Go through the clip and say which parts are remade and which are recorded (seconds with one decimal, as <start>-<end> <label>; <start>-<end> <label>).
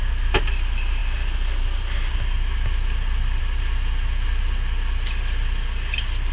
0.0-6.3 recorded